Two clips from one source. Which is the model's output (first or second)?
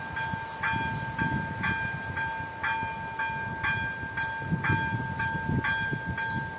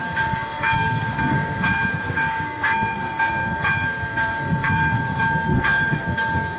second